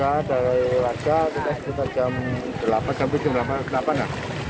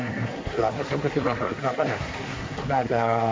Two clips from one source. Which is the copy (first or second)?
second